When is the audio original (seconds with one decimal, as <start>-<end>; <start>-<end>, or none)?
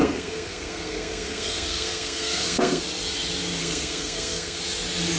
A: 2.8-3.6; 4.6-5.2